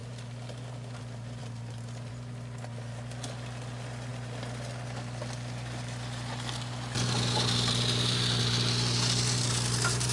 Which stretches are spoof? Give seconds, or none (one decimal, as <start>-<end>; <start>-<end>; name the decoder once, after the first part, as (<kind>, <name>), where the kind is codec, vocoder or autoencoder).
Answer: 0.0-1.0 (vocoder, BigVGAN v2)

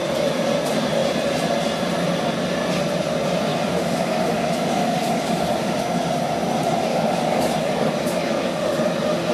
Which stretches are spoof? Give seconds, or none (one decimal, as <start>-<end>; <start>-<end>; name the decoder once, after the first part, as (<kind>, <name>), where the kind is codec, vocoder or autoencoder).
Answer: 3.5-5.8 (codec, DAC); 6.9-8.8

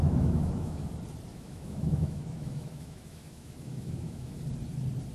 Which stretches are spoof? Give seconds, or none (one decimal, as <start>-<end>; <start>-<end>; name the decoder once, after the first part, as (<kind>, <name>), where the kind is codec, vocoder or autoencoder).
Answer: 0.0-0.9 (autoencoder, DAC-VAE); 1.3-4.4

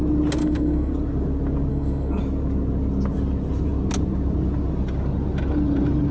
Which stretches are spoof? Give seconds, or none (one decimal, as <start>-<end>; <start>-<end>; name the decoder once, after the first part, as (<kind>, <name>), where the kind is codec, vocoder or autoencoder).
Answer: 0.4-0.9 (codec, SNAC); 1.7-2.2